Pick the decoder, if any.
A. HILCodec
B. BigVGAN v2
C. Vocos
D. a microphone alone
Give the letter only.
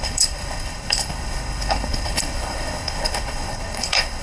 A